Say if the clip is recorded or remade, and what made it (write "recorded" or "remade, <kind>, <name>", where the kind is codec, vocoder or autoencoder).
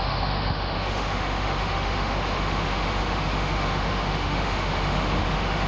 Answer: remade, autoencoder, DAC-VAE